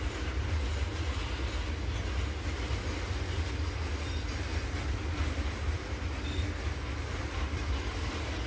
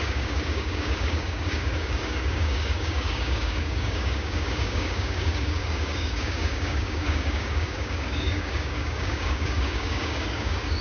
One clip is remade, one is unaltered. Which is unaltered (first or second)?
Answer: first